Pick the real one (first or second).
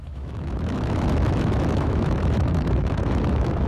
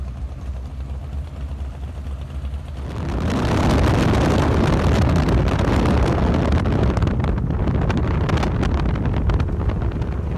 second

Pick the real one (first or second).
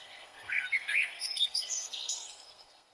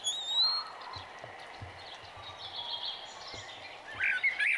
second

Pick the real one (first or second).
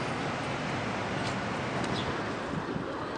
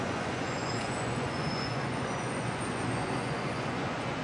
first